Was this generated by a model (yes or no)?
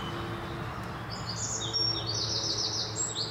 no